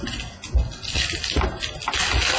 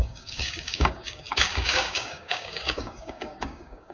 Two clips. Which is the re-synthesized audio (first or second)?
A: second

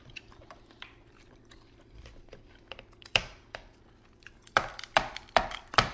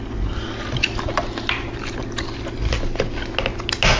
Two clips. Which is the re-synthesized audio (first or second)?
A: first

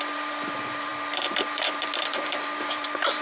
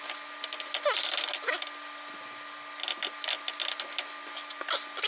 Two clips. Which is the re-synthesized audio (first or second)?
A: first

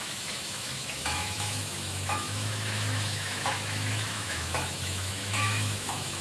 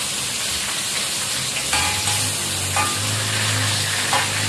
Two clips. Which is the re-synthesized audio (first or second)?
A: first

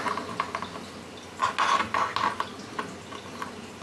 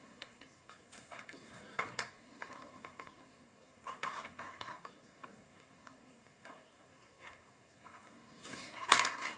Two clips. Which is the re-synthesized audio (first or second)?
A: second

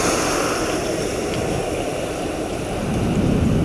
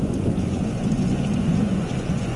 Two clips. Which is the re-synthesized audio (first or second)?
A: second